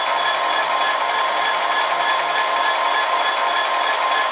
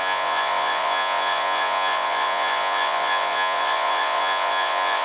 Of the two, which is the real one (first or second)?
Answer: first